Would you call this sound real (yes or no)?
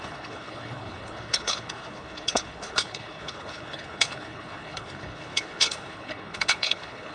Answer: no